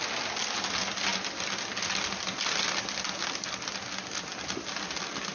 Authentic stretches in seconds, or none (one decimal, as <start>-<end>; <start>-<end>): 0.0-5.3